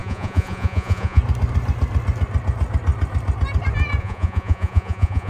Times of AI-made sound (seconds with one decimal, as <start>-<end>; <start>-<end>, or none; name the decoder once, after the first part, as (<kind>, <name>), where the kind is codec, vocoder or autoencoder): 0.0-1.2 (vocoder, Vocos); 4.0-5.3